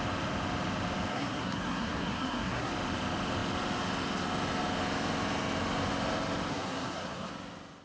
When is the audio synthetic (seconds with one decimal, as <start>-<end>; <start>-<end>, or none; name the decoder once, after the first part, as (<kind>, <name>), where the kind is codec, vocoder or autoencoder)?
1.1-2.7 (codec, SNAC); 6.5-7.3